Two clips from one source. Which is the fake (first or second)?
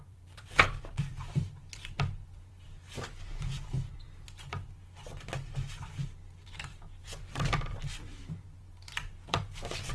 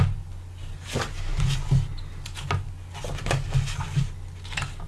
first